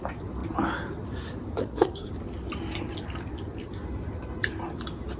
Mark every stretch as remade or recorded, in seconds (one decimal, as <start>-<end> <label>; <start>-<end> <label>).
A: 0.0-1.6 recorded; 1.6-2.1 remade; 2.1-5.2 recorded